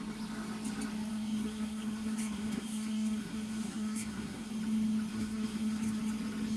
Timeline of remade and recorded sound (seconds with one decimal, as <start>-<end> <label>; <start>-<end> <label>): 0.0-1.1 recorded; 1.1-4.5 remade; 4.5-5.1 recorded; 5.1-6.0 remade; 6.0-6.6 recorded